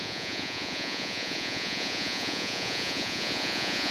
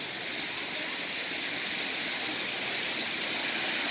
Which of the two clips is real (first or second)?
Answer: second